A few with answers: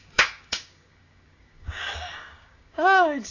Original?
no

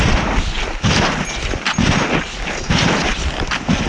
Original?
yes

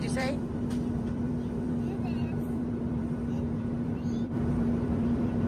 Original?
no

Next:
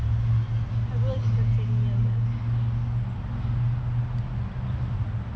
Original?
yes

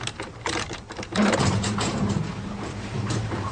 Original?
no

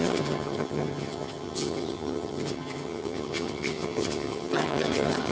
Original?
no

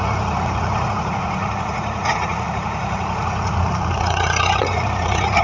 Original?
no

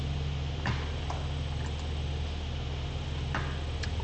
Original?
yes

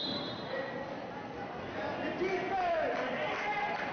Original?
yes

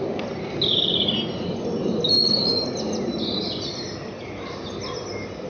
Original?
yes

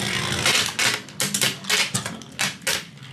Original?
yes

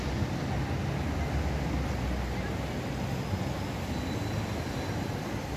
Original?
yes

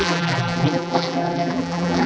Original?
no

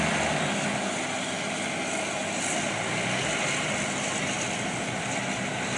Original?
yes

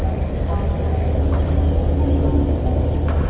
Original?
yes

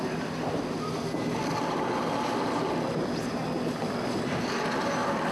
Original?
yes